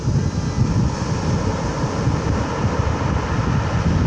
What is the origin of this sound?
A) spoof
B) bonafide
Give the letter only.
B